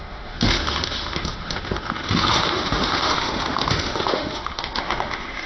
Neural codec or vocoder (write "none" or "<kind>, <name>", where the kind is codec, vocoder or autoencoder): autoencoder, DAC-VAE